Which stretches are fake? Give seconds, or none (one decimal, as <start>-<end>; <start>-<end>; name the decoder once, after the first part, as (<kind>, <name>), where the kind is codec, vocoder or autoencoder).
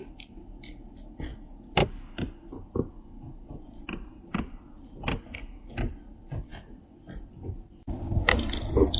none